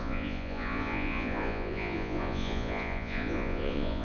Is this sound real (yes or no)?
no